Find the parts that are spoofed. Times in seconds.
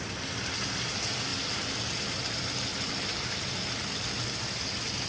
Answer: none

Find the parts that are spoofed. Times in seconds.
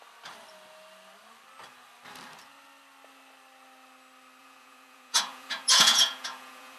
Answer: 4.4-6.8 (vocoder, Vocos)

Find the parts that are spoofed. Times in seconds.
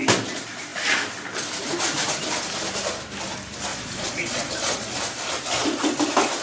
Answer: 3.7-4.9 (vocoder, Vocos)